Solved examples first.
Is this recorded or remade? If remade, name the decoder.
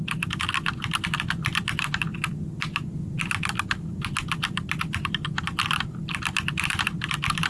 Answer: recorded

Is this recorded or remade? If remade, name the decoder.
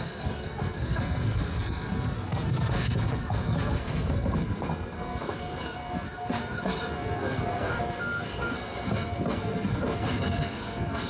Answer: remade, codec, SNAC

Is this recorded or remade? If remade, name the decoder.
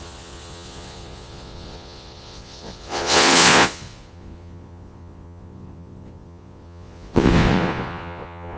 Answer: remade, vocoder, Vocos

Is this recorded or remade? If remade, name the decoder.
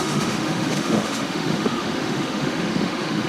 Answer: remade, autoencoder, DAC-VAE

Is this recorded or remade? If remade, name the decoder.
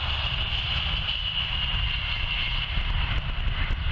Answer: recorded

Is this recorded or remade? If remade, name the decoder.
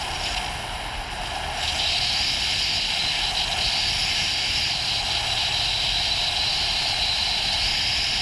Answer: recorded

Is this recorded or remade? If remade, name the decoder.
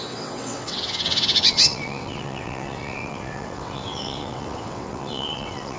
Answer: remade, vocoder, WaveNeXt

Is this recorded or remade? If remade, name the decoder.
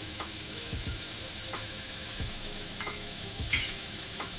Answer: remade, autoencoder, DAC-VAE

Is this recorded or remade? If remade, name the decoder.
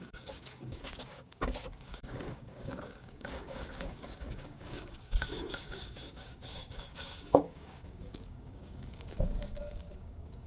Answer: remade, codec, DAC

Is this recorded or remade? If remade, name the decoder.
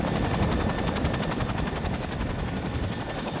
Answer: recorded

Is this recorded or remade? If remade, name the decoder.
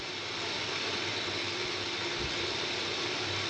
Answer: recorded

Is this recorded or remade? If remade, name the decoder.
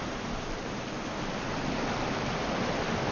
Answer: recorded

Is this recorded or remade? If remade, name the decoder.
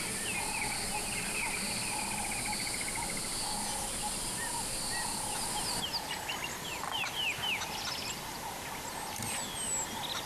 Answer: recorded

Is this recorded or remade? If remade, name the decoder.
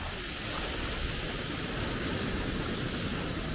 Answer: recorded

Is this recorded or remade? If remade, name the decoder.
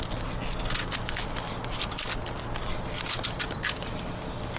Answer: recorded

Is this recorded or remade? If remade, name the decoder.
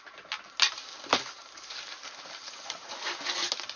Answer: recorded